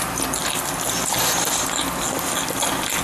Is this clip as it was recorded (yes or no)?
yes